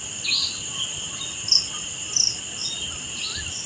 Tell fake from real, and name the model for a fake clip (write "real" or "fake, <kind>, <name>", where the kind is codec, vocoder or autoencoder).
fake, vocoder, BigVGAN v2